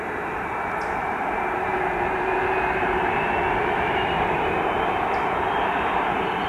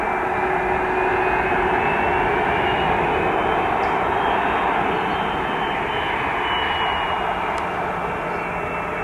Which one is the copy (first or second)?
first